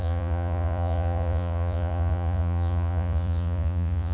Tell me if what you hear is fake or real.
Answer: fake